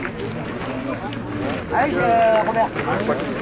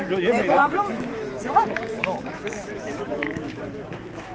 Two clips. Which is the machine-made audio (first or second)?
second